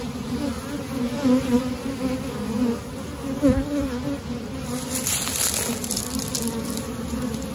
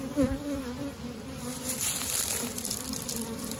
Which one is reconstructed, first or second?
second